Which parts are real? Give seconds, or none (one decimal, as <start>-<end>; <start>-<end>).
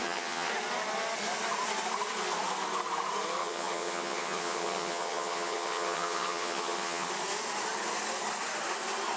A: 0.5-3.4; 7.1-9.2